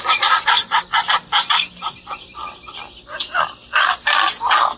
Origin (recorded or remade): recorded